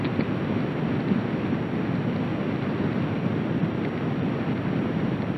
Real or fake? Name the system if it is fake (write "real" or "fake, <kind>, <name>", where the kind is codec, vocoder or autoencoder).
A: real